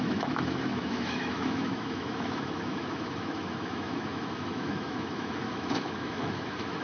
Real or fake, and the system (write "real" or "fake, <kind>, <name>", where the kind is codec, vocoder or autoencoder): fake, autoencoder, DAC-VAE